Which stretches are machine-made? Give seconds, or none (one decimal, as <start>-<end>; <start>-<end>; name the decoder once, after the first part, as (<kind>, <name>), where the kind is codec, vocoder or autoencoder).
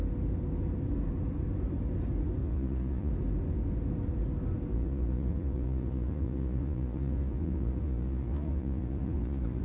2.4-3.1 (vocoder, Vocos); 4.7-9.6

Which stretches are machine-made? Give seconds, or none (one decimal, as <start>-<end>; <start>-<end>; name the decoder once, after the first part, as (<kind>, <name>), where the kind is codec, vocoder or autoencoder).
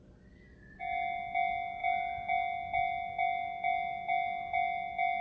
none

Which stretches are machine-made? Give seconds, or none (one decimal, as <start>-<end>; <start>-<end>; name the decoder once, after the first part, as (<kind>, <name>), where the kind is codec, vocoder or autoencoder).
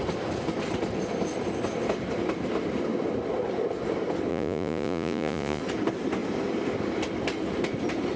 4.3-5.6 (vocoder, Vocos)